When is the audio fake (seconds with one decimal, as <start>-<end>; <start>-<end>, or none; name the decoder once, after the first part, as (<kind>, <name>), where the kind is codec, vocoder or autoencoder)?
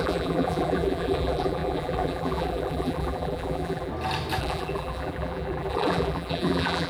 0.0-3.9 (vocoder, BigVGAN v2); 4.4-6.9